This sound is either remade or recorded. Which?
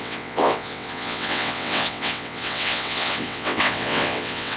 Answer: remade